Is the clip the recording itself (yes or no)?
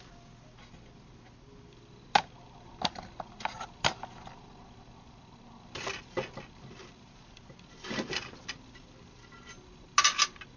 yes